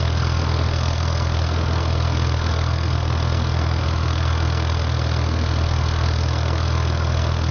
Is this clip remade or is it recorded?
remade